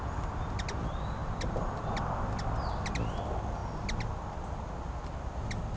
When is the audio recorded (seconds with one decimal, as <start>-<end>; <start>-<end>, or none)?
0.0-5.8